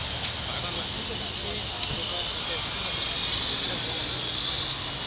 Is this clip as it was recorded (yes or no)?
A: yes